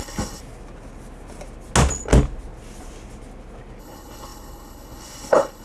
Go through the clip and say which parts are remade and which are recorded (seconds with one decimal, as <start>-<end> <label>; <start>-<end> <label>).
0.0-0.4 remade; 0.4-3.8 recorded; 3.8-5.6 remade